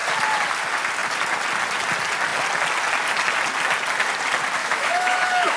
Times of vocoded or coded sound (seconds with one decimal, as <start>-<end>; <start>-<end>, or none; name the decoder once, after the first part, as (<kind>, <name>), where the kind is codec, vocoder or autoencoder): 4.6-5.6 (autoencoder, DAC-VAE)